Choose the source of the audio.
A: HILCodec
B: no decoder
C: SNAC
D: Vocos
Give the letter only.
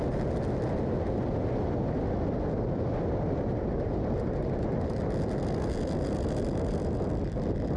B